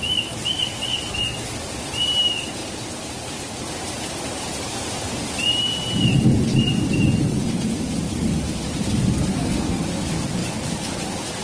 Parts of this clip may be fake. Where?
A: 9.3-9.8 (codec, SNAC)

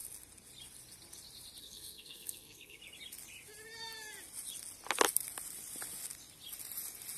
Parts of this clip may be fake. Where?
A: 1.6-2.8 (codec, SNAC)

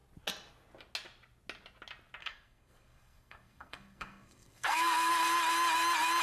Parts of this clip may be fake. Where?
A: 2.2-5.1 (codec, SNAC)

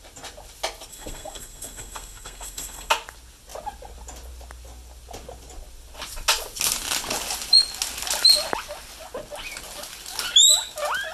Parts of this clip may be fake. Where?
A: 0.9-2.9 (codec, SNAC)

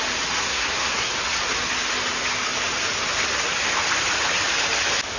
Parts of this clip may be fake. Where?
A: 0.4-1.1 (codec, SNAC)

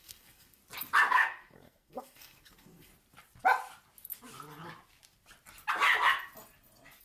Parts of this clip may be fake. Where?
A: 0.0-0.6 (codec, SNAC); 1.1-2.9